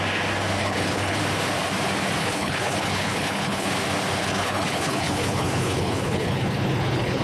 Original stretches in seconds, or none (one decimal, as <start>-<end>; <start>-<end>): 0.0-0.6; 1.2-2.2; 3.7-4.2